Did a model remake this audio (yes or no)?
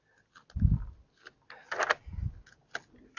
no